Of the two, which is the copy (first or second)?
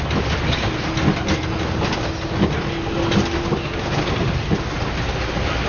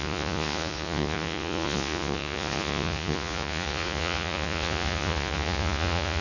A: second